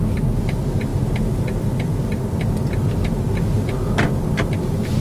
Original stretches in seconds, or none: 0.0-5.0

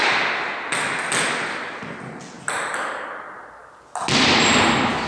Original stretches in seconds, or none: 0.0-5.1

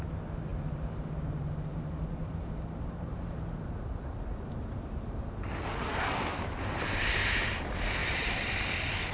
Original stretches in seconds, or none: 0.0-0.5; 5.2-8.0; 8.6-9.1

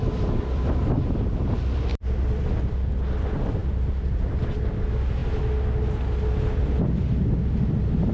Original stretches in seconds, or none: 1.0-1.9; 2.6-3.6; 4.7-8.1

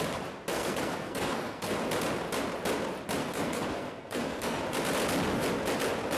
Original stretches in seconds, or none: 0.0-0.5; 1.7-3.2; 4.6-6.2

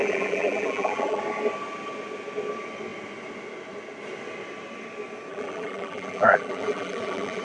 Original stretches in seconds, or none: 1.2-5.3

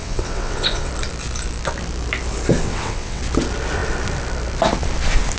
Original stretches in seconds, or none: 0.9-2.6; 3.2-5.4